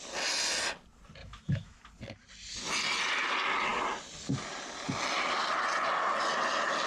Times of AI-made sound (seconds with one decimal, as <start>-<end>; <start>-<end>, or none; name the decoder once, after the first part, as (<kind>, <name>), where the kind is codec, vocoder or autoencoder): 1.2-1.8 (autoencoder, DAC-VAE)